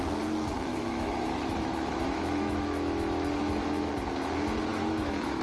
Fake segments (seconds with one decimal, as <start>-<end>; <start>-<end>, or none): 0.7-3.9; 4.7-5.4